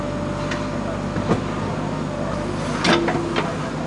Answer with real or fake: real